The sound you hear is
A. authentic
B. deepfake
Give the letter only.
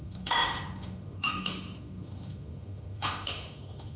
B